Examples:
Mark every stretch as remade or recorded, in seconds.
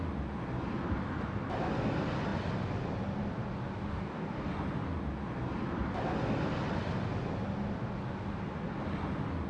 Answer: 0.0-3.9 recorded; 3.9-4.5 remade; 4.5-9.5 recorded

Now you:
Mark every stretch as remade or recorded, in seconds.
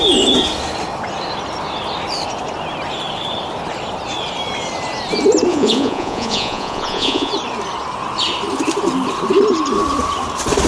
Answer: 0.0-5.5 recorded; 5.5-7.3 remade; 7.3-10.7 recorded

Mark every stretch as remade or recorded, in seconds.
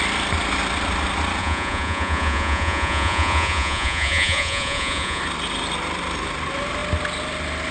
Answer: 0.0-1.4 recorded; 1.4-5.2 remade; 5.2-7.7 recorded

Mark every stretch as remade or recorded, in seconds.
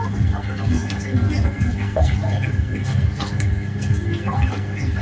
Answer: 0.0-5.0 remade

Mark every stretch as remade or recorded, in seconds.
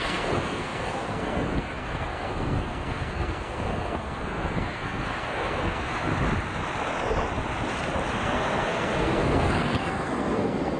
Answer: 0.0-6.1 remade; 6.1-8.2 recorded; 8.2-10.8 remade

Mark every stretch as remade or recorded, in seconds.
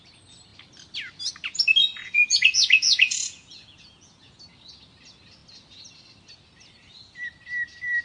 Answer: 0.0-1.8 recorded; 1.8-4.4 remade; 4.4-8.0 recorded